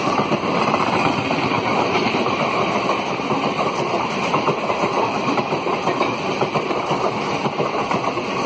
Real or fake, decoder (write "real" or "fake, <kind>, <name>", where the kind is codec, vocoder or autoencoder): fake, vocoder, BigVGAN v2